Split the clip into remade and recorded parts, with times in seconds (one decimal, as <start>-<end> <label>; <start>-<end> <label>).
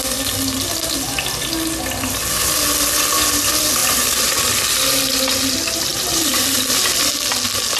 0.0-3.8 recorded; 3.8-5.3 remade; 5.3-5.9 recorded; 5.9-7.1 remade; 7.1-7.8 recorded